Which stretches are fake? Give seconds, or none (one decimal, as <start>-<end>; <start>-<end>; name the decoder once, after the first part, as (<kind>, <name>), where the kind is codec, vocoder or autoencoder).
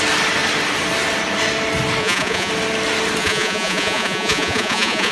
2.0-2.5 (vocoder, Vocos); 3.2-5.1